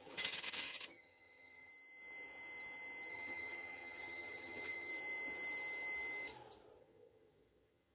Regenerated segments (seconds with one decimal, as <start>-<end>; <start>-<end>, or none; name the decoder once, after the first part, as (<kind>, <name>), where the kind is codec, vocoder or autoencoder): 0.0-1.7 (vocoder, HiFi-GAN); 3.1-4.9; 6.8-7.9